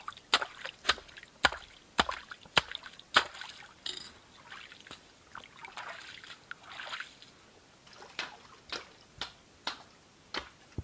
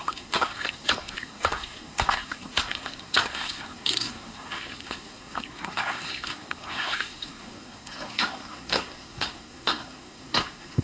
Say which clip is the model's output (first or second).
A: second